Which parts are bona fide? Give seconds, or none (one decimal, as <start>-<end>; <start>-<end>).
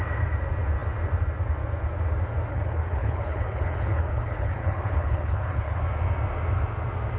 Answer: 0.0-2.5; 5.8-7.2